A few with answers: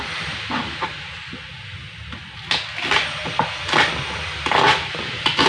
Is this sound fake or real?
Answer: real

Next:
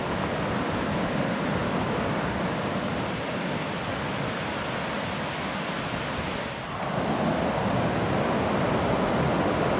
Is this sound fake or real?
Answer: real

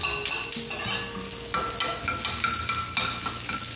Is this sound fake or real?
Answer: real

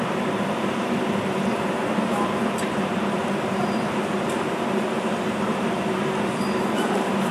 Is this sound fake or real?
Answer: fake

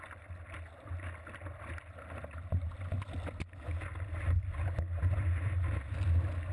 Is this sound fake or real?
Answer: real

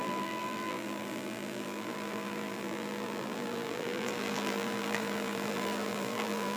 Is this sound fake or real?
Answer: fake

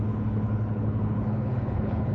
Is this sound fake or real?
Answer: fake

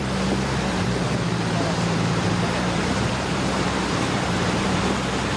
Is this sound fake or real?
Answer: fake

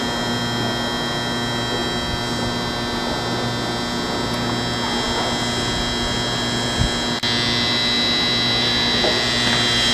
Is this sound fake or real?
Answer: real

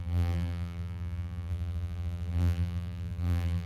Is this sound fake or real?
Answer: fake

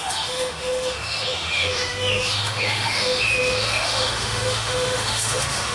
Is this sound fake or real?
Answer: fake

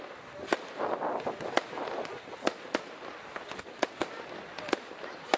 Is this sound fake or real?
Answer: real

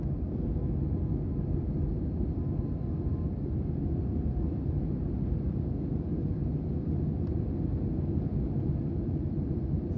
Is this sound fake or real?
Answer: real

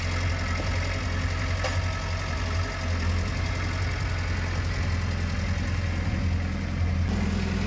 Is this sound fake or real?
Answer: real